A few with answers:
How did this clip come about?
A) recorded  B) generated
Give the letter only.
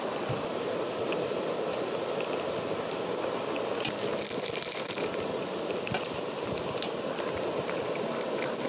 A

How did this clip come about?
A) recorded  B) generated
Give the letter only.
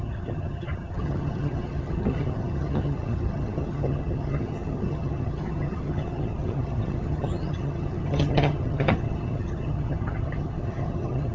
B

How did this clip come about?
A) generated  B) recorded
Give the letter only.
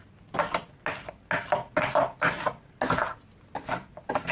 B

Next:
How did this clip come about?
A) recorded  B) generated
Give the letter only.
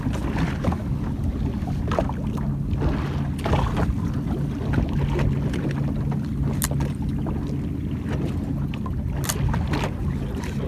A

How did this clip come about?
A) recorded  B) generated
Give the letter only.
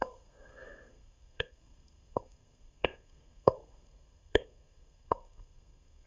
B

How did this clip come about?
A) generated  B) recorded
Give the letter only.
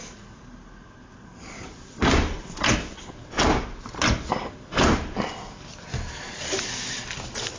B